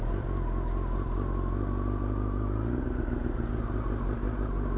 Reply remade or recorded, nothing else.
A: recorded